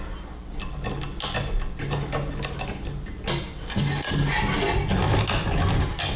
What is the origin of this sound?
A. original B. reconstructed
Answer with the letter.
A